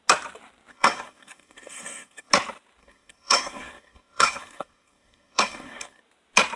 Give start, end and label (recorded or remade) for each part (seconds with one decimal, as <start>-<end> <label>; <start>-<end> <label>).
0.0-0.7 recorded; 0.7-2.3 remade; 2.3-2.8 recorded; 2.8-6.0 remade; 6.0-6.6 recorded